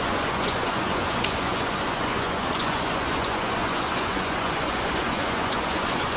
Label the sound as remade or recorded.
remade